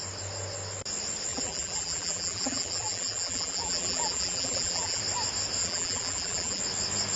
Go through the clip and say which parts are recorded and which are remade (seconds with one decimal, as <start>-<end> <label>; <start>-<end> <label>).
0.0-1.3 recorded; 1.3-5.0 remade; 5.0-5.6 recorded; 5.6-6.6 remade; 6.6-7.2 recorded